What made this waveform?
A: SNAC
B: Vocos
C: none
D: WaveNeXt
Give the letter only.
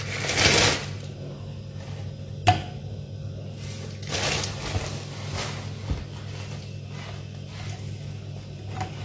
C